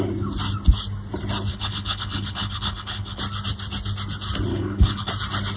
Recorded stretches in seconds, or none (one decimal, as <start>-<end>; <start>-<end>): 0.0-1.5; 3.2-4.5; 5.1-5.6